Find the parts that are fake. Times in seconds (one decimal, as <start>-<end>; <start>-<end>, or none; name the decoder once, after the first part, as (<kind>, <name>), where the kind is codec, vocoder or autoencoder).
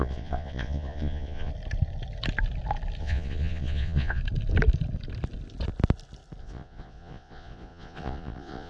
0.0-1.5 (vocoder, Vocos); 3.0-4.2; 6.4-8.7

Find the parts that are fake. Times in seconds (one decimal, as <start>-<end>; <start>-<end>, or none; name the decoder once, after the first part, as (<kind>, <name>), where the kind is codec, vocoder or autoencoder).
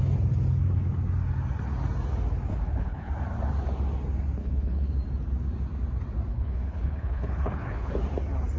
2.5-3.1 (codec, HILCodec); 4.4-4.9; 6.3-7.9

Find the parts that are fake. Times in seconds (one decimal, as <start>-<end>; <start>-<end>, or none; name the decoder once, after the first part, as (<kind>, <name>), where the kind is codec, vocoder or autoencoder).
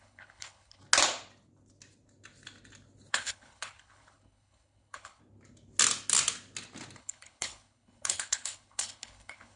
0.0-0.8 (codec, HILCodec); 3.1-5.2; 7.0-9.6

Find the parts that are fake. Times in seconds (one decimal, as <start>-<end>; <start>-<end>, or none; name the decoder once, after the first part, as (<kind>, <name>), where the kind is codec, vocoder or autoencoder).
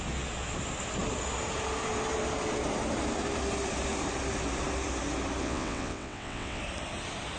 5.4-6.6 (vocoder, WaveNeXt)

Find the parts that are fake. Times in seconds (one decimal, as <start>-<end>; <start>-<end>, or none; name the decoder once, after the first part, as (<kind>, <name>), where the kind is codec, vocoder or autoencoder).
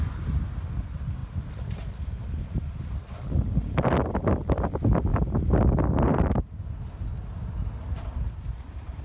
none